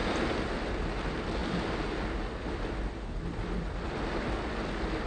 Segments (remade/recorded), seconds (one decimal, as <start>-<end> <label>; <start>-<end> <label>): 0.0-5.1 recorded